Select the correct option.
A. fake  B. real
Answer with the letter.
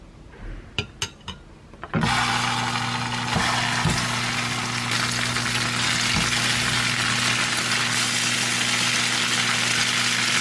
B